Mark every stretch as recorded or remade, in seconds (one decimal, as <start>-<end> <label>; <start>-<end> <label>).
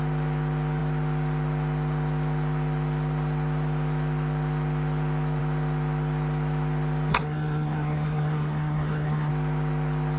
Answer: 0.0-7.1 recorded; 7.1-9.3 remade; 9.3-10.2 recorded